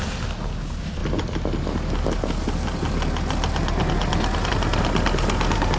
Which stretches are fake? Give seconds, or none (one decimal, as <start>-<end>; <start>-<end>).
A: none